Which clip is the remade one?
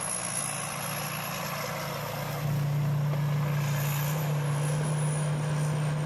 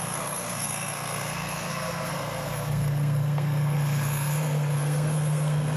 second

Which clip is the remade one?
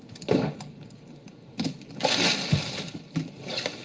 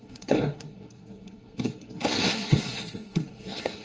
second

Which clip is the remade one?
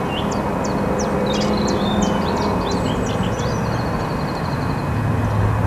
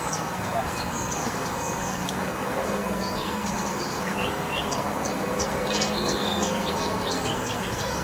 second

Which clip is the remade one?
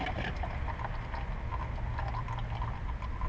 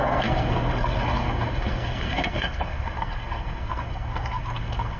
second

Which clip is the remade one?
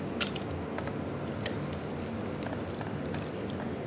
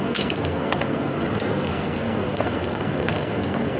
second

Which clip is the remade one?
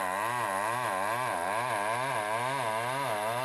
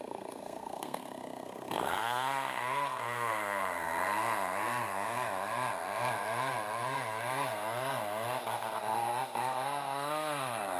second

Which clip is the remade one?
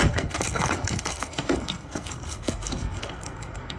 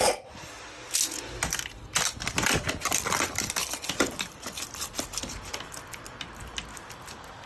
first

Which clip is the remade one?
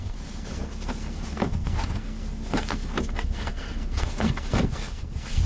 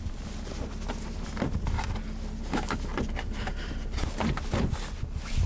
first